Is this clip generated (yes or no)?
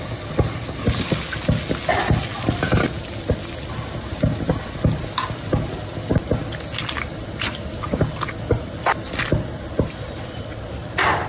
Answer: no